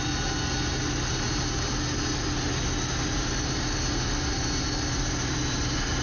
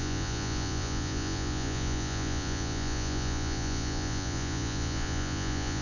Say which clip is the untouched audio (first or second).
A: first